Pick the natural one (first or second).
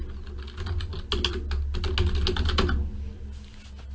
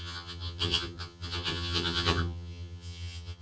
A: first